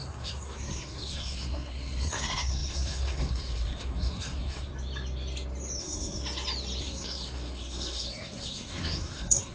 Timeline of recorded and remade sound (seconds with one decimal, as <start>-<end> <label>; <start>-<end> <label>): 0.0-4.7 remade; 4.7-5.8 recorded; 5.8-6.2 remade; 6.2-6.8 recorded; 6.8-9.5 remade